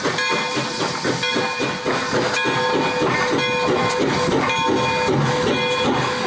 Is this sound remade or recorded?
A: recorded